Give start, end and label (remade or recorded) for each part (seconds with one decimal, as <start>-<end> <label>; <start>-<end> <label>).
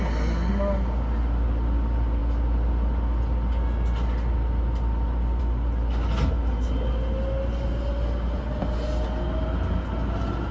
0.0-10.5 recorded